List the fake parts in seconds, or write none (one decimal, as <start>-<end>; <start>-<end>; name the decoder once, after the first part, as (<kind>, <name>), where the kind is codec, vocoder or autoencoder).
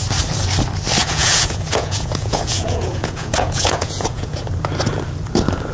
1.0-4.4 (vocoder, Vocos)